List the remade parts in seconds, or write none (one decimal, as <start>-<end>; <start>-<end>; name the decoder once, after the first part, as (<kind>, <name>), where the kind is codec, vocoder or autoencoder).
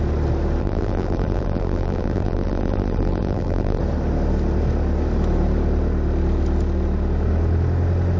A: 0.6-3.8 (vocoder, BigVGAN v2)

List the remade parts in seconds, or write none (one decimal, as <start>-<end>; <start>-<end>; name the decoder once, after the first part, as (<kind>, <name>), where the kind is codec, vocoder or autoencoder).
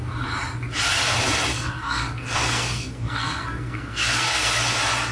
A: 1.5-4.6 (codec, SNAC)